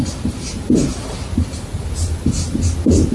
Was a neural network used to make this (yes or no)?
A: no